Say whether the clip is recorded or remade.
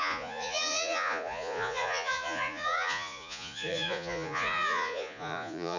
remade